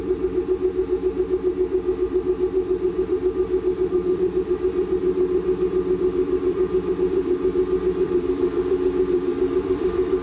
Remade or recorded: remade